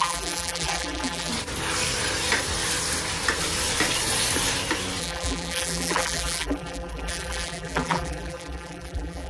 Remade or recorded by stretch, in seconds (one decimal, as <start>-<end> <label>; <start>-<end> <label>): 0.0-1.3 remade; 1.3-5.0 recorded; 5.0-9.3 remade